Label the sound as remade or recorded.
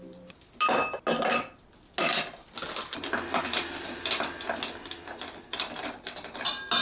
recorded